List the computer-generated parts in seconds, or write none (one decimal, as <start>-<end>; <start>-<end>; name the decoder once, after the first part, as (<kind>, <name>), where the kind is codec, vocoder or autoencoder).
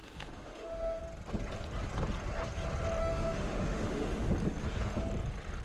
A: 0.0-1.0 (autoencoder, DAC-VAE); 3.0-4.3